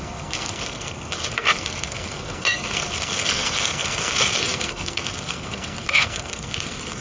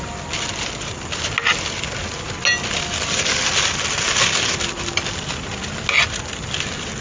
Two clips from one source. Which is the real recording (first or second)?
second